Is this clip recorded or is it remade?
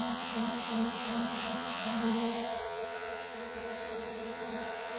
remade